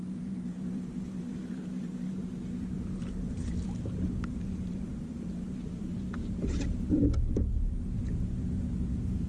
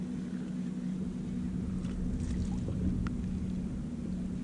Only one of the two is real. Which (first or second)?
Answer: second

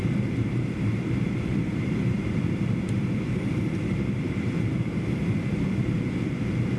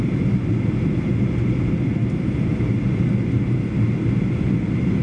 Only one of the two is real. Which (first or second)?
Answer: second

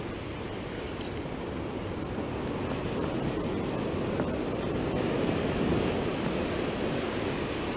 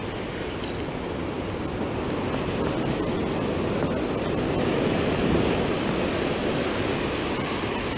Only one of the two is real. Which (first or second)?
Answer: second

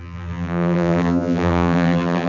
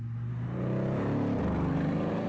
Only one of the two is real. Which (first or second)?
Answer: second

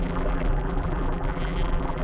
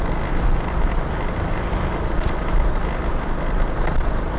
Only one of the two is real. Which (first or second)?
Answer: second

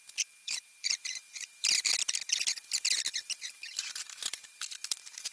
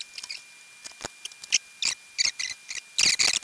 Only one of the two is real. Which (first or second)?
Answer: second